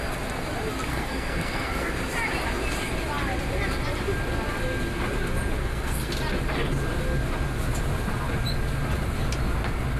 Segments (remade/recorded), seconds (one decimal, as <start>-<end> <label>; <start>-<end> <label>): 0.0-0.9 recorded; 0.9-1.9 remade; 1.9-5.6 recorded; 5.6-6.1 remade; 6.1-10.0 recorded